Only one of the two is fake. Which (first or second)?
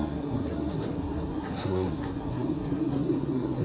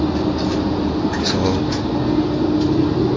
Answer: first